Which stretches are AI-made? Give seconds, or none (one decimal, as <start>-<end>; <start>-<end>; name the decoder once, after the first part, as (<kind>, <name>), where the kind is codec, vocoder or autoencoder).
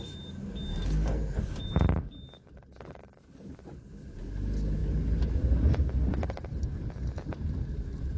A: 0.7-1.4 (codec, SNAC)